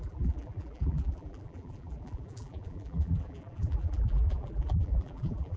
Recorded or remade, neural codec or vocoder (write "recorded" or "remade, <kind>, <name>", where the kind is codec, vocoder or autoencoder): remade, vocoder, BigVGAN v2